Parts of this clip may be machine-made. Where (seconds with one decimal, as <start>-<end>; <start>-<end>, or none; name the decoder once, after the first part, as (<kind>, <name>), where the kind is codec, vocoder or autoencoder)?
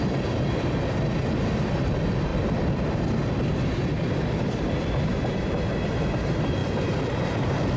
none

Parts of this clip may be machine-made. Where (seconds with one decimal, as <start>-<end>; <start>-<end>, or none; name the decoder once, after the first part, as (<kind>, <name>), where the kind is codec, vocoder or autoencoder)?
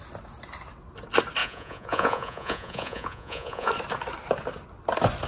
1.4-3.7 (vocoder, Vocos)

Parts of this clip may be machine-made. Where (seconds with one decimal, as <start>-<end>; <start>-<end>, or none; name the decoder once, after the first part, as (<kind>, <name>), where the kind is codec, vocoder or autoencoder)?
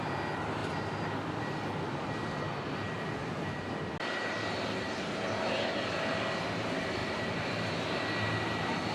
3.2-3.9 (vocoder, BigVGAN v2); 7.0-7.7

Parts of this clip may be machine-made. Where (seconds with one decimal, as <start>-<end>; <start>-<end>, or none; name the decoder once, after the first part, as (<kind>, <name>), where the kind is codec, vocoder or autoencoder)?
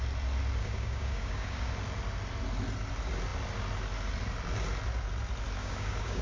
0.6-1.7 (codec, DAC); 5.6-6.2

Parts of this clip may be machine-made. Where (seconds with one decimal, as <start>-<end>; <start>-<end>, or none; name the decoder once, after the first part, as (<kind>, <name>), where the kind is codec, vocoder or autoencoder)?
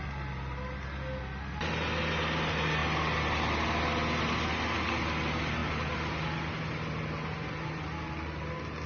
none